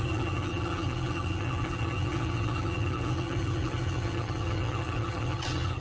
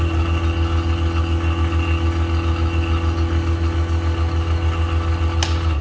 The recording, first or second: second